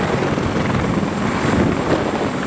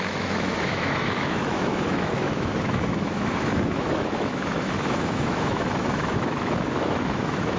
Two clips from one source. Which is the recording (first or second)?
first